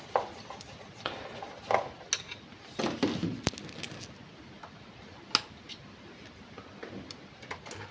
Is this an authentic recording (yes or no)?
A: yes